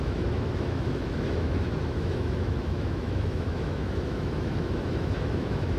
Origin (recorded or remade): remade